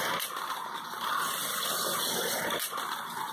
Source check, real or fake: real